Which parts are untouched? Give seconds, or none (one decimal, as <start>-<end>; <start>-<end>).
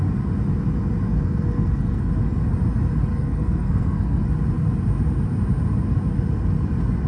0.0-1.1; 2.1-3.1; 4.3-7.1